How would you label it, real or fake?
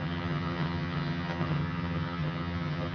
fake